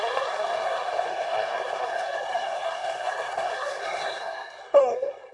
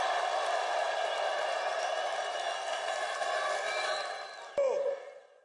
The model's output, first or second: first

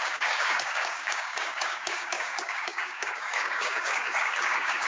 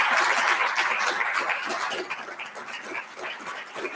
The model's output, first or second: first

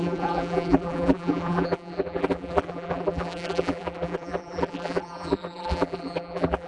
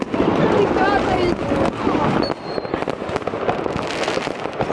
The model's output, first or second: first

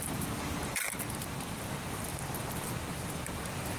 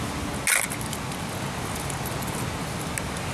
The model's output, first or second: first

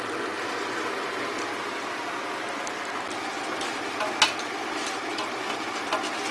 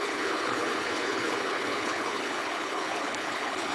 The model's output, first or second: second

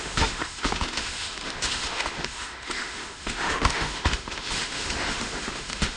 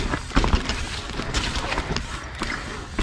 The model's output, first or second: first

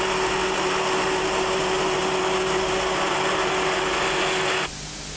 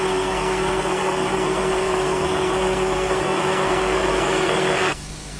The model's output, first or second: second